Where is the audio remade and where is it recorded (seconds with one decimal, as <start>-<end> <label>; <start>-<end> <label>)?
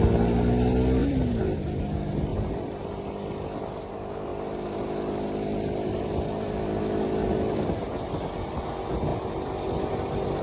0.0-1.0 recorded; 1.0-1.8 remade; 1.8-4.3 recorded; 4.3-8.2 remade; 8.2-10.4 recorded